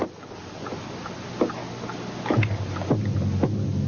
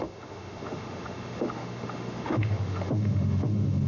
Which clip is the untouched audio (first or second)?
first